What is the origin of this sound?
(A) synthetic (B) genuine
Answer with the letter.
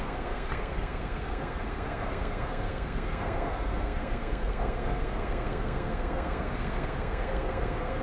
A